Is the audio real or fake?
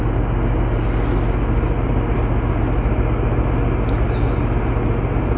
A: real